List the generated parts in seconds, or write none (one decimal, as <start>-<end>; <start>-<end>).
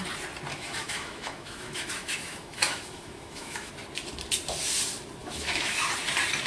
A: 0.5-3.7; 5.2-5.8